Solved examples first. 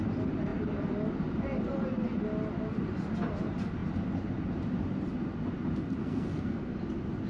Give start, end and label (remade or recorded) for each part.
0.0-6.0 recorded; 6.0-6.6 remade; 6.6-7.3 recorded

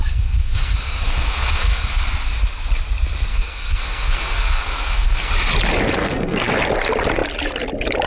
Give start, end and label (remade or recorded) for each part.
0.0-2.0 remade; 2.0-3.3 recorded; 3.3-5.3 remade; 5.3-6.0 recorded; 6.0-6.5 remade; 6.5-8.1 recorded